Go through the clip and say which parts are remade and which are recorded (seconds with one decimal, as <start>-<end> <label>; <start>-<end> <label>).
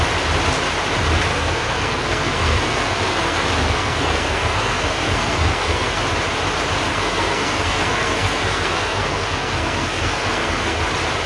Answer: 0.0-1.3 recorded; 1.3-6.0 remade; 6.0-6.9 recorded; 6.9-10.9 remade; 10.9-11.3 recorded